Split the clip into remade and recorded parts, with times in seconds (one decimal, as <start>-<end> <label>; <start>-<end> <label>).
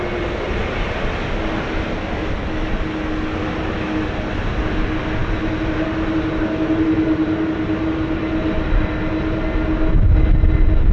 0.0-10.9 recorded